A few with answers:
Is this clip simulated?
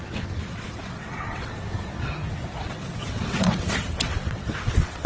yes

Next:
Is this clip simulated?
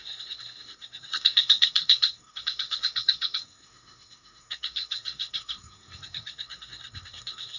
yes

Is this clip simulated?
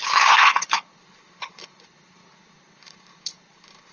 yes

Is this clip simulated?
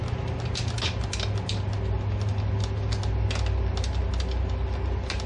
no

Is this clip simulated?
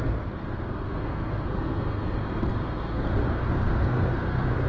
yes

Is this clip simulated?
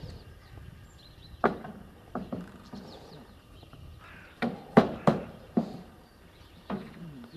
yes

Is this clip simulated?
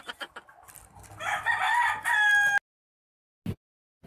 no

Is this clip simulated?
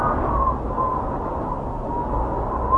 no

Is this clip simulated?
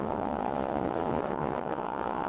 yes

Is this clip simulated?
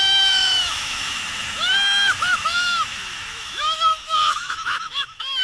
yes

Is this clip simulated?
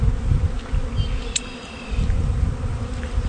no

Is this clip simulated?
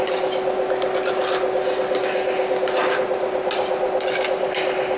no